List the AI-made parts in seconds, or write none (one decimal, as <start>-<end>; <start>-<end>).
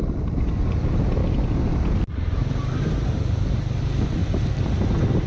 none